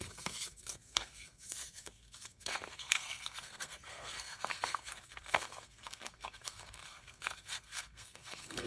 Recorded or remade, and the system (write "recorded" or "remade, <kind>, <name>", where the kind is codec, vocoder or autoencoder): remade, codec, SNAC